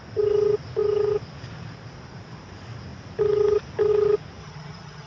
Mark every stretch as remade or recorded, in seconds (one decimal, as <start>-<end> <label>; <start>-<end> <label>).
0.0-4.4 recorded; 4.4-5.1 remade